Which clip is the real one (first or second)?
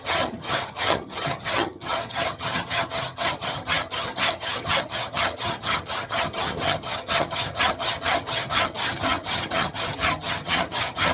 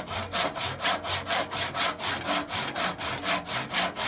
second